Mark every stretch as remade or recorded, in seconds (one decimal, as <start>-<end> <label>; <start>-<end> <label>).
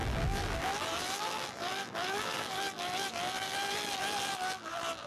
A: 0.0-5.1 remade